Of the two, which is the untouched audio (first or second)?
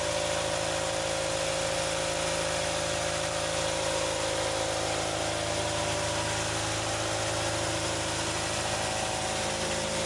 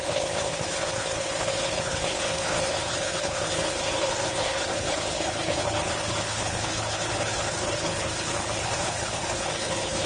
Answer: first